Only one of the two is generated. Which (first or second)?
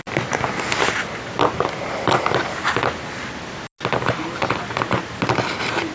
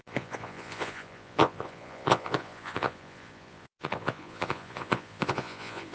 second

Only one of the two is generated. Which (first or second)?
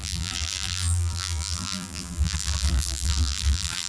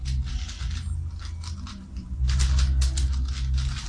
first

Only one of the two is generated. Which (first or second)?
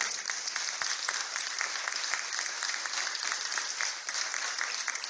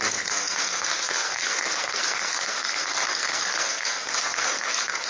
second